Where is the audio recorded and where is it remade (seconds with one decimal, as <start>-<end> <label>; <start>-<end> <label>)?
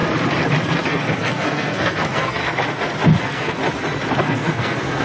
0.0-0.8 recorded; 0.8-2.4 remade; 2.4-3.2 recorded; 3.2-3.6 remade; 3.6-4.2 recorded; 4.2-5.0 remade